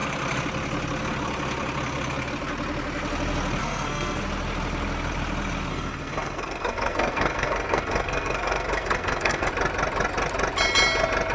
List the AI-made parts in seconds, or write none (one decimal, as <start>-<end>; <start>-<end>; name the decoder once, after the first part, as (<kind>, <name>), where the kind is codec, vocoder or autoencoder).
3.6-4.2 (codec, SNAC); 5.7-9.5